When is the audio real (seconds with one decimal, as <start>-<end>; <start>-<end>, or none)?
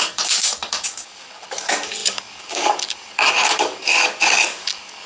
none